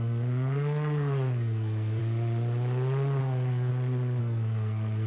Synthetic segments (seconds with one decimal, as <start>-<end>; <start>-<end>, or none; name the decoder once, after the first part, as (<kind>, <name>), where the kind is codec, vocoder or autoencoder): 0.0-2.0 (codec, SNAC); 3.2-3.7; 4.2-5.1